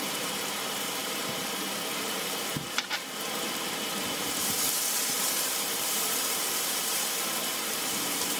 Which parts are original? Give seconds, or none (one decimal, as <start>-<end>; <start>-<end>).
none